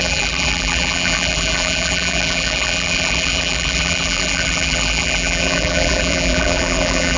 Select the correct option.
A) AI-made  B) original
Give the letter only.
A